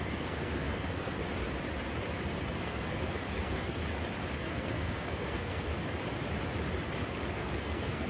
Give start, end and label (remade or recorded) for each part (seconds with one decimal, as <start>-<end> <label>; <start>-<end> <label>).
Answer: 0.0-1.2 remade; 1.2-2.4 recorded; 2.4-3.8 remade; 3.8-4.4 recorded; 4.4-5.7 remade; 5.7-7.3 recorded; 7.3-8.1 remade